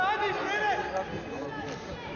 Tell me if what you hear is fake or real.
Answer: real